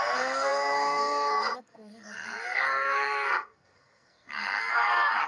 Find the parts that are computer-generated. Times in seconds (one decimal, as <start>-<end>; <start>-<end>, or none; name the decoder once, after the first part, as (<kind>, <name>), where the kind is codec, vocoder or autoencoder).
0.0-5.3 (codec, SNAC)